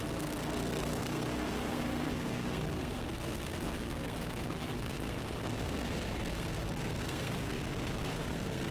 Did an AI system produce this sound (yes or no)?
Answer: yes